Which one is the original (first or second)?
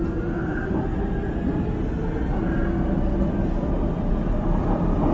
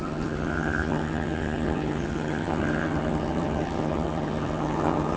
first